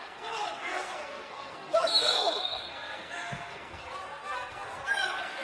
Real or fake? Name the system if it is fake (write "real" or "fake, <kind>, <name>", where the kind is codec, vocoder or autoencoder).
fake, codec, SNAC